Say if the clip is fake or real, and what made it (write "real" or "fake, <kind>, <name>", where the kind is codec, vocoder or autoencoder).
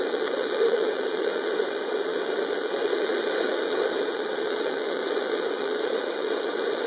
fake, vocoder, WaveNeXt